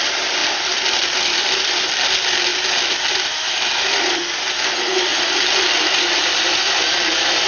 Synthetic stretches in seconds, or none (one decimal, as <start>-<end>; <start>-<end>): 0.0-2.5; 3.1-7.5